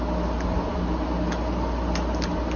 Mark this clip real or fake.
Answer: real